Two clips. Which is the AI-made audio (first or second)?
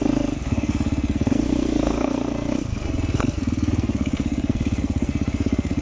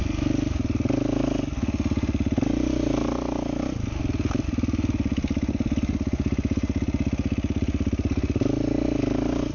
first